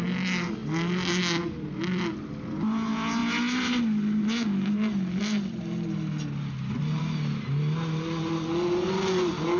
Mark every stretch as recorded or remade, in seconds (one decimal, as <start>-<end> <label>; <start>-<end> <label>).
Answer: 0.0-9.6 recorded